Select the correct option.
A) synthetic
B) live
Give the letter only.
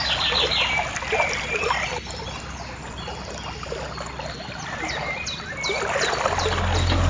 B